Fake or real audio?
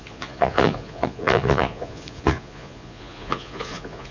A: fake